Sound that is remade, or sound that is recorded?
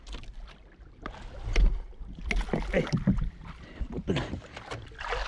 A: recorded